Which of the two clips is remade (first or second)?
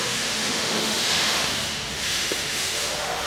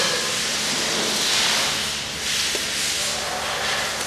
first